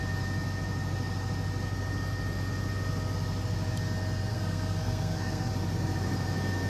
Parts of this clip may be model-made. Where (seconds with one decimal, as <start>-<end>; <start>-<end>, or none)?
4.3-5.5